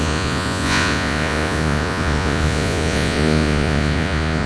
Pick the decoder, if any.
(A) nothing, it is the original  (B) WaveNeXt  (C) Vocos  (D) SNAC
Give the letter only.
C